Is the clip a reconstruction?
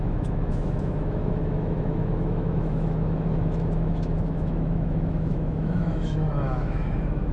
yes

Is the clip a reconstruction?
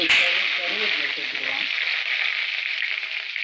no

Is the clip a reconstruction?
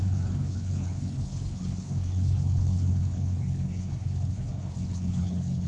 yes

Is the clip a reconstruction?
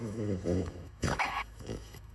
yes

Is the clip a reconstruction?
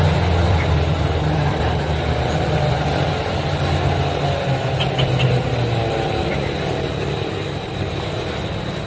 no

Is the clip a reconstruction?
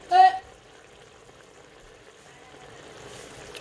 yes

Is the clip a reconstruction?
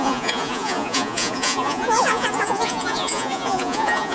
yes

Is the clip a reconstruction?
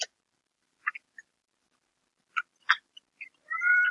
no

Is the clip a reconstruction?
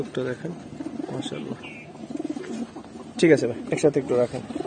no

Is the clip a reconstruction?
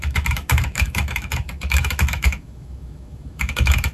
yes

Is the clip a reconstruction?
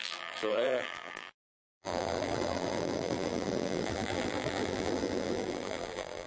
yes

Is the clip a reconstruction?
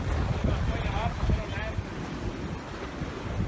no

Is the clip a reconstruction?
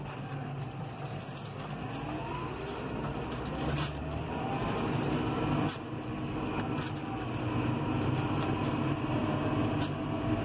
no